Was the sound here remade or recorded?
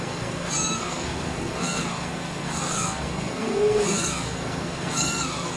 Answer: remade